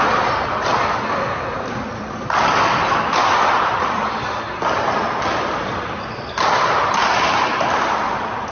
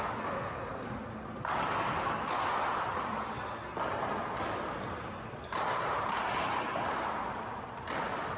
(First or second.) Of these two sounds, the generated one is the first